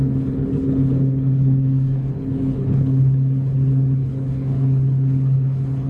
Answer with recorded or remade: remade